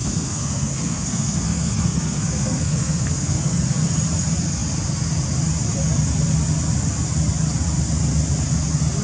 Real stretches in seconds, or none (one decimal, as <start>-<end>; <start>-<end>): 3.6-9.0